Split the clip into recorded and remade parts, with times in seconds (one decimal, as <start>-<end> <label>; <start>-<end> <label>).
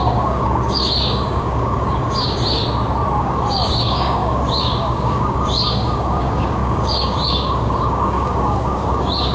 0.0-2.6 remade; 2.6-3.2 recorded; 3.2-9.3 remade